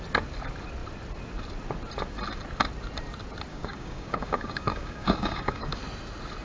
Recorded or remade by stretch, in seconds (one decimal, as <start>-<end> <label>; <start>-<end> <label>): 0.0-3.5 recorded; 3.5-5.8 remade; 5.8-6.4 recorded